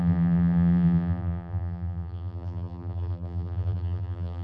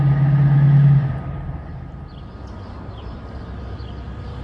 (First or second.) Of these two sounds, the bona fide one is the second